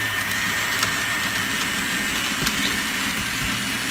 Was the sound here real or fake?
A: real